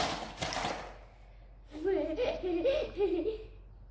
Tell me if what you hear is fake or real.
real